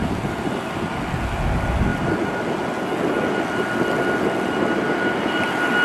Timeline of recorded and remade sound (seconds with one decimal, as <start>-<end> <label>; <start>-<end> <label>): 0.0-0.5 remade; 0.5-5.8 recorded